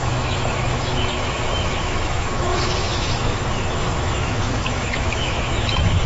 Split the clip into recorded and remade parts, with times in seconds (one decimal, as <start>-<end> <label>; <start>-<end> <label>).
0.0-6.1 remade

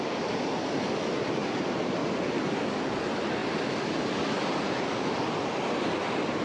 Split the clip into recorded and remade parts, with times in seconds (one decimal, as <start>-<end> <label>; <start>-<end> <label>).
0.0-2.0 recorded; 2.0-2.8 remade; 2.8-3.4 recorded; 3.4-3.9 remade; 3.9-6.4 recorded

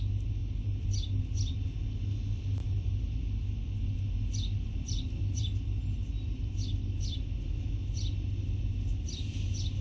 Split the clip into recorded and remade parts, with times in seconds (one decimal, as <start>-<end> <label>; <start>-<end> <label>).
0.0-9.8 recorded

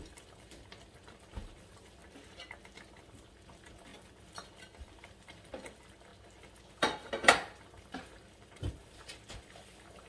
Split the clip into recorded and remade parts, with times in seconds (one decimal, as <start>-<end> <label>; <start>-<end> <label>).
0.0-2.0 remade; 2.0-3.1 recorded; 3.1-6.1 remade; 6.1-6.7 recorded; 6.7-10.1 remade

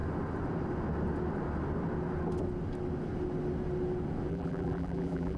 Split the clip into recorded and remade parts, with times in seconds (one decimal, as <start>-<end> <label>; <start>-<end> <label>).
0.0-4.3 recorded; 4.3-5.4 remade

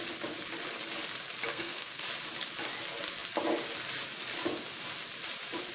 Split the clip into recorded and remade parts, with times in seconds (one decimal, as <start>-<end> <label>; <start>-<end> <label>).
0.0-1.5 recorded; 1.5-2.0 remade; 2.0-5.7 recorded

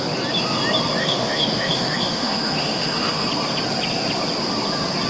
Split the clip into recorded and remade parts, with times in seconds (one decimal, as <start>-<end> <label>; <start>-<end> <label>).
0.0-1.0 recorded; 1.0-3.3 remade; 3.3-5.1 recorded

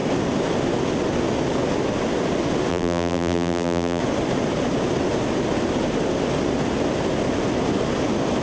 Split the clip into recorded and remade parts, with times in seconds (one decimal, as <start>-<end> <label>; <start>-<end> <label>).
0.0-2.7 recorded; 2.7-4.0 remade; 4.0-8.4 recorded